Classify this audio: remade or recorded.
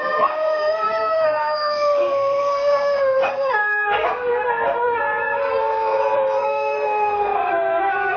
remade